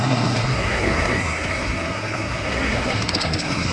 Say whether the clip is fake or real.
fake